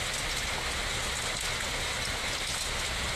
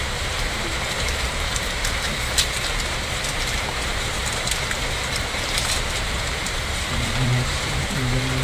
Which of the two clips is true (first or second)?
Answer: first